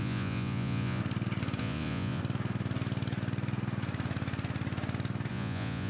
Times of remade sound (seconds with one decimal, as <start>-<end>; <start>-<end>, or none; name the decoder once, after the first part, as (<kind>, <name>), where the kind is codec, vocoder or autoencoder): 0.0-1.0 (vocoder, Vocos); 1.6-2.2; 5.3-5.9

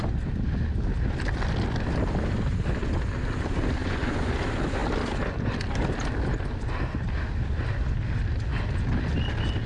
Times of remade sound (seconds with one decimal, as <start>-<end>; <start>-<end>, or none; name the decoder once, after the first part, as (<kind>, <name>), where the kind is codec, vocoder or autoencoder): 3.8-4.3 (vocoder, Vocos)